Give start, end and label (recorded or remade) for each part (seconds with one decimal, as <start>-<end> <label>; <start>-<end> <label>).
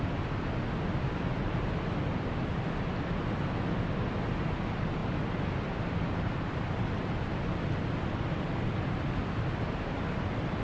0.0-10.6 recorded